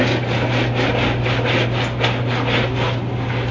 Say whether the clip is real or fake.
real